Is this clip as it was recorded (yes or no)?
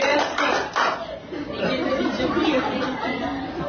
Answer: no